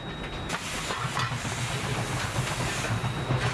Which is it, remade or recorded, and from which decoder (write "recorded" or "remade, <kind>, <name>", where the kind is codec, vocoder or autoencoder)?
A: remade, vocoder, BigVGAN v2